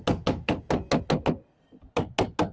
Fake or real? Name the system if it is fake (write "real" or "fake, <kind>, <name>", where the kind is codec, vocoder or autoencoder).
real